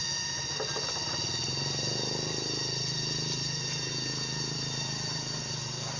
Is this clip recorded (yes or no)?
yes